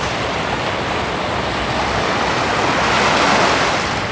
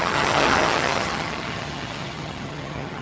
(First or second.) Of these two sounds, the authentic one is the first